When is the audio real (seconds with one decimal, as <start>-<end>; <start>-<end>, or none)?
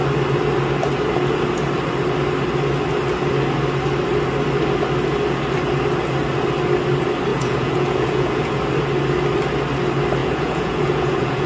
0.0-7.3; 8.5-10.2